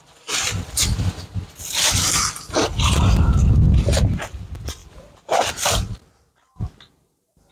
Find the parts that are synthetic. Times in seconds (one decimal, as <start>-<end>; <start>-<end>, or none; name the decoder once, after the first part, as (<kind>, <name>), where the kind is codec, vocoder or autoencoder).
2.7-3.6 (vocoder, BigVGAN v2); 4.8-5.5